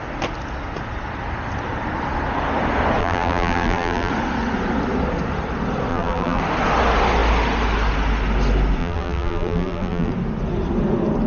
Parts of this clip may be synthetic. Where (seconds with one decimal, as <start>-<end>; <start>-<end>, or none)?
3.0-4.1; 5.9-6.4; 8.8-10.1